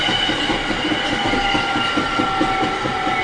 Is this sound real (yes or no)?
yes